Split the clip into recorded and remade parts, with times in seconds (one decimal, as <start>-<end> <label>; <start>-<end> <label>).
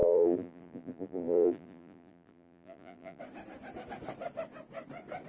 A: 0.0-3.2 remade; 3.2-5.3 recorded